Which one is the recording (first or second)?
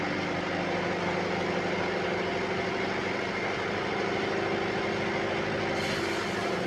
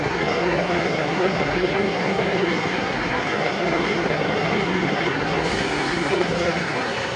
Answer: first